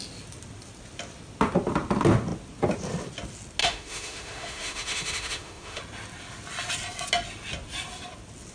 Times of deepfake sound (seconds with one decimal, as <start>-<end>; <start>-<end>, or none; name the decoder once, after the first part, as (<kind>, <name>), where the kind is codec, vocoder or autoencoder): 3.6-5.8 (autoencoder, DAC-VAE)